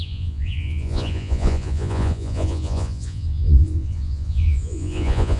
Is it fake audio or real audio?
fake